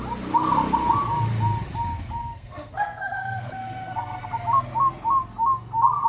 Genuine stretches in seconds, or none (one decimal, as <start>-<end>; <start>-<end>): 0.0-2.2; 4.3-6.1

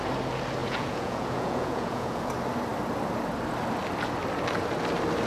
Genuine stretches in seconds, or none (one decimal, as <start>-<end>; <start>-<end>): 0.0-0.6; 2.3-5.3